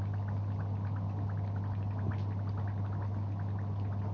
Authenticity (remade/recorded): recorded